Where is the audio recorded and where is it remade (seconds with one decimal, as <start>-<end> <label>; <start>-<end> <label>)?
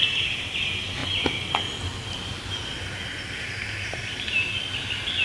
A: 0.0-5.2 recorded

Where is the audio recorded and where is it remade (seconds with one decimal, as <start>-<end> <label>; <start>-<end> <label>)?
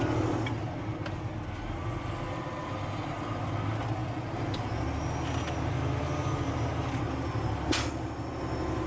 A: 0.0-8.9 recorded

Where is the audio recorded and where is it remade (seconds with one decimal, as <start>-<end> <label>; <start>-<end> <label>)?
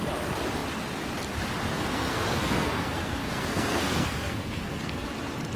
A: 0.0-1.7 recorded; 1.7-5.1 remade; 5.1-5.6 recorded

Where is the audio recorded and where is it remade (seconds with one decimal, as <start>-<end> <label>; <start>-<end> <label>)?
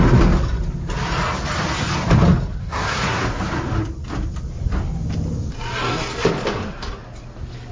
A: 0.0-2.6 recorded; 2.6-3.2 remade; 3.2-7.7 recorded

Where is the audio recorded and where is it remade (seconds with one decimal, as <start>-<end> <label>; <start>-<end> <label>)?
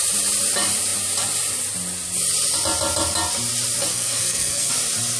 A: 0.0-3.9 recorded; 3.9-4.7 remade; 4.7-5.2 recorded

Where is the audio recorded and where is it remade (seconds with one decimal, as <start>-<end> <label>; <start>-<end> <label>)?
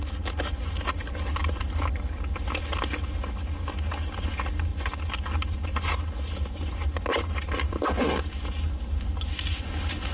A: 0.0-10.1 recorded